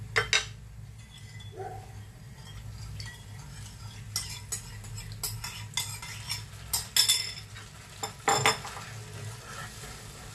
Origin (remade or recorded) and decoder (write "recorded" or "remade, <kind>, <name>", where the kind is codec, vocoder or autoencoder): recorded